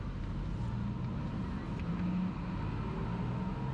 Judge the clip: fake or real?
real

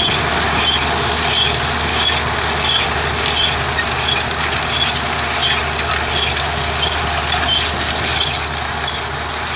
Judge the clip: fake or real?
real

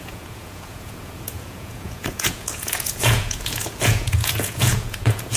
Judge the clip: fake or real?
fake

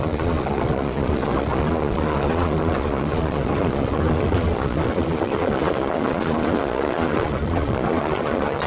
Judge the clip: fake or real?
fake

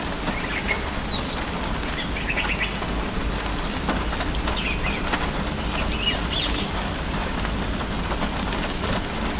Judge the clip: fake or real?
real